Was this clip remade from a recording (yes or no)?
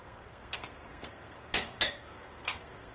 yes